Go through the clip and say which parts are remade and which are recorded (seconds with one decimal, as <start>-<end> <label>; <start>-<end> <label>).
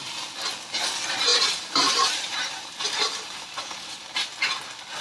0.0-1.3 recorded; 1.3-4.3 remade; 4.3-5.0 recorded